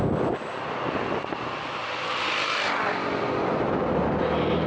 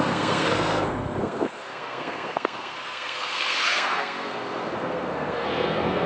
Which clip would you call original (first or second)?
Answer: first